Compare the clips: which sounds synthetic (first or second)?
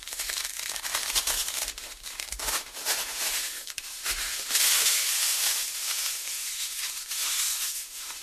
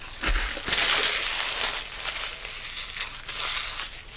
first